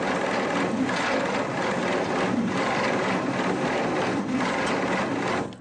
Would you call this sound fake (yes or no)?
no